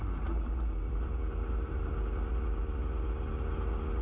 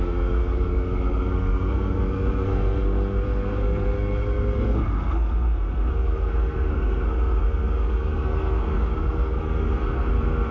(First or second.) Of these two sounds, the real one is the first